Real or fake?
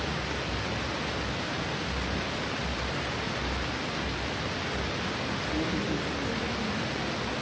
real